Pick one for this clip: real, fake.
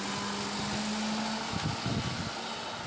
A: real